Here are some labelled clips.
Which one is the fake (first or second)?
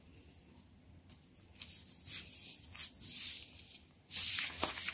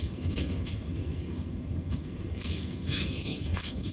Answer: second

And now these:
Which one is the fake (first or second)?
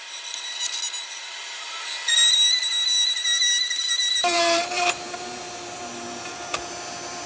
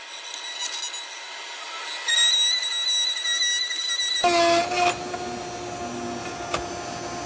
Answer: first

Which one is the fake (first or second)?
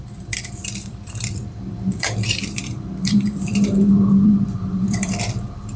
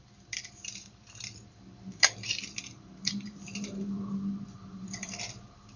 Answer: first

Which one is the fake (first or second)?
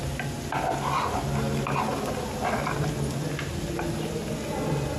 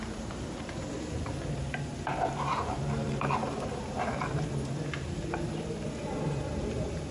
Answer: second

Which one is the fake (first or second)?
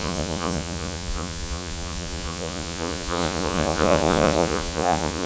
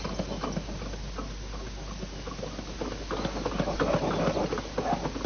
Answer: first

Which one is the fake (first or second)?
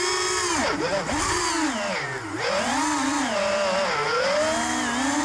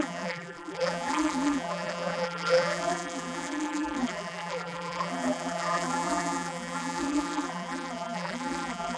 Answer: second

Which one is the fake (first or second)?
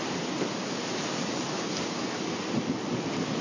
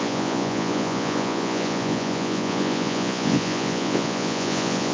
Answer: second